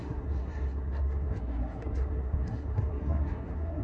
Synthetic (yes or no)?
yes